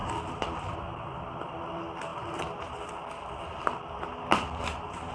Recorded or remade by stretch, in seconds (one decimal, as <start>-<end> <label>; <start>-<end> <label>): 0.0-1.7 remade; 1.7-5.1 recorded